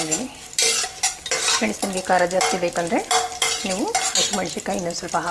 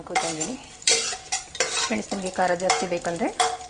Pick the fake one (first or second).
second